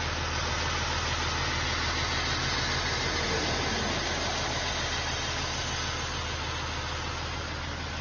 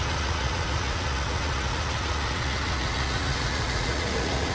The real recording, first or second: first